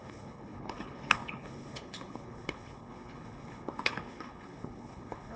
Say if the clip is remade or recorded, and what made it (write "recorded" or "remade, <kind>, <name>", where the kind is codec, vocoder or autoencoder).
remade, codec, HILCodec